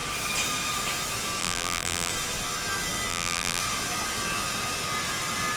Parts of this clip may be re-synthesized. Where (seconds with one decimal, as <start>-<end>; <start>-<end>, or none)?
1.4-2.1; 3.1-3.6

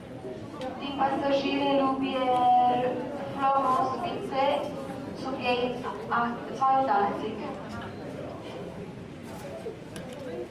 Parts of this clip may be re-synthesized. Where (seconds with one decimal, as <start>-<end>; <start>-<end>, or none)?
5.6-6.5

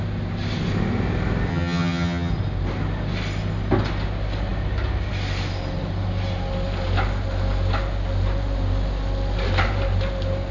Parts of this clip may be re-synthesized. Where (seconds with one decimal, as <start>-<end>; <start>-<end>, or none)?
1.5-2.3

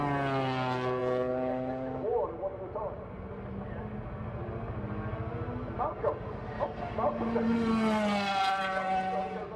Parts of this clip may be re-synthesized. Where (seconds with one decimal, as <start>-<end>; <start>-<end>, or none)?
none

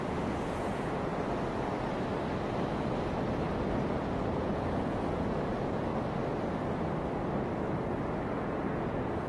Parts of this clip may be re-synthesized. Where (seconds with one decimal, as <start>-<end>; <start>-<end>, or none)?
0.0-1.1; 3.9-5.9; 8.3-9.3

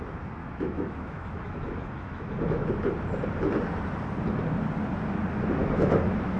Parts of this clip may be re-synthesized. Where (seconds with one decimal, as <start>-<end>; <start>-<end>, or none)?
0.4-2.7; 5.6-6.4